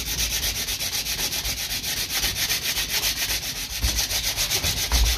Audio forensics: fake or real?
real